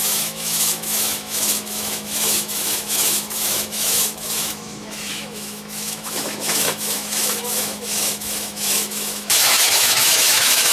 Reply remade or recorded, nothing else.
remade